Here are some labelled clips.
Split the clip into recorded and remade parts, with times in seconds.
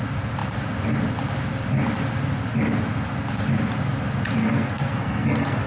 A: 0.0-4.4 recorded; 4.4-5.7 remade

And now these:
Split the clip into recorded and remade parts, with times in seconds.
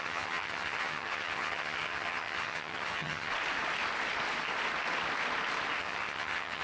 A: 0.0-3.3 remade; 3.3-5.8 recorded; 5.8-6.6 remade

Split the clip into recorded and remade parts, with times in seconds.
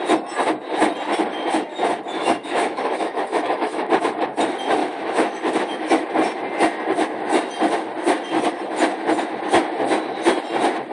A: 0.0-2.2 recorded; 2.2-3.9 remade; 3.9-4.8 recorded; 4.8-6.1 remade; 6.1-10.9 recorded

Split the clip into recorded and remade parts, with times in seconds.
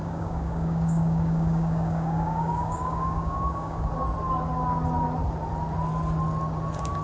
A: 0.0-3.9 remade; 3.9-7.0 recorded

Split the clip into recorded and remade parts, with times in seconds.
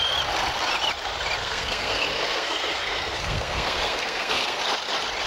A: 0.0-1.4 recorded; 1.4-4.6 remade; 4.6-5.3 recorded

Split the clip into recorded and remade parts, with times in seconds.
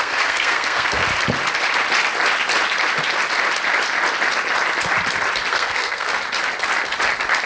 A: 0.0-1.0 remade; 1.0-5.5 recorded; 5.5-6.1 remade; 6.1-7.5 recorded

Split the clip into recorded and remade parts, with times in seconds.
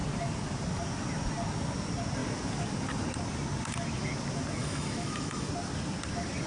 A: 0.0-4.6 recorded; 4.6-5.5 remade; 5.5-6.5 recorded